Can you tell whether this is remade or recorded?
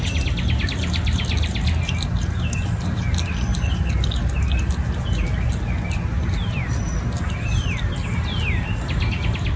recorded